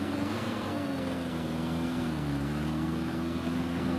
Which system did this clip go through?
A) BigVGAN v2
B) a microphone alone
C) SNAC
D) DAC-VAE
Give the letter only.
C